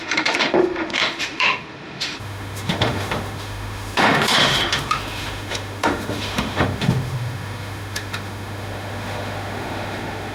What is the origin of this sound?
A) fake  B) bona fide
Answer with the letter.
A